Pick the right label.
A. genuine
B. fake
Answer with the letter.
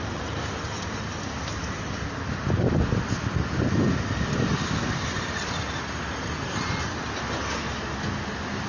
A